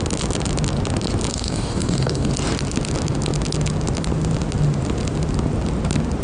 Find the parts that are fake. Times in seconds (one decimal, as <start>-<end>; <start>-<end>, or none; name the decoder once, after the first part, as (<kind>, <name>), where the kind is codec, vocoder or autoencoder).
1.3-2.3 (codec, DAC)